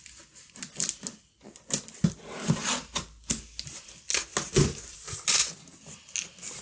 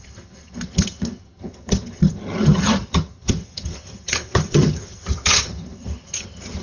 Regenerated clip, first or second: second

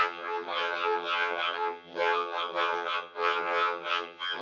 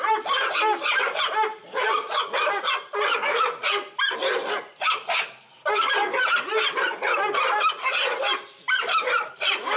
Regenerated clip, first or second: first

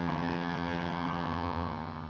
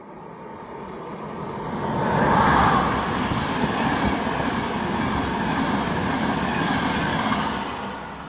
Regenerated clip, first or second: first